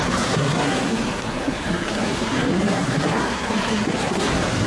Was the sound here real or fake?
fake